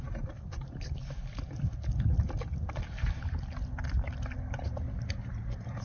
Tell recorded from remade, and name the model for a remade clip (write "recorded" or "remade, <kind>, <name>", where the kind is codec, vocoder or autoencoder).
recorded